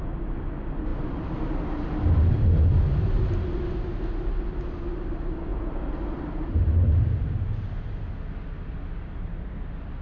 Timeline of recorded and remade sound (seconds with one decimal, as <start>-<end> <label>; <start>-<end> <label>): 0.0-10.0 recorded